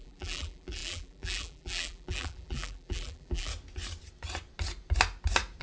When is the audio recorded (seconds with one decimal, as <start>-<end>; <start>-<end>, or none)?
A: 3.5-5.6